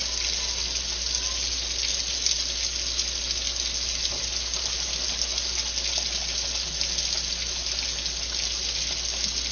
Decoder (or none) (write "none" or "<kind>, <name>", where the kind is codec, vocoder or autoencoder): none